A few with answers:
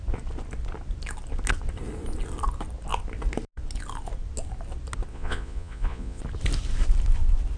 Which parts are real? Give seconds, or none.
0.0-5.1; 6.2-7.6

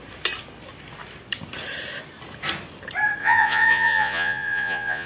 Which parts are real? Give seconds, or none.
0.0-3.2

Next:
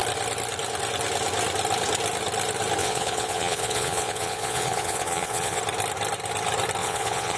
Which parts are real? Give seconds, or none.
0.0-2.8; 5.6-6.8

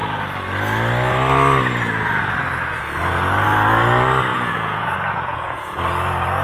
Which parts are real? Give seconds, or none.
0.0-4.3; 5.7-6.4

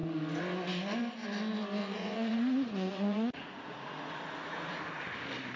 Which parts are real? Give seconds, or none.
0.0-1.8; 4.8-5.6

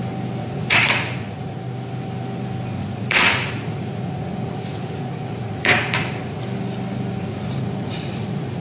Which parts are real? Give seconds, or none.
0.0-0.4; 1.6-2.8; 6.4-7.3